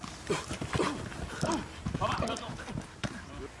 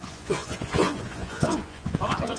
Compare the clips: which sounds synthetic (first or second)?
second